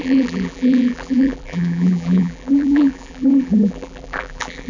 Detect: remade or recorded remade